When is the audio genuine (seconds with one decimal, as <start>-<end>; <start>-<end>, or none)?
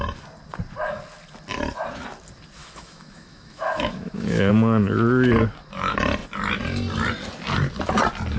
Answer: 0.0-2.6; 4.5-8.4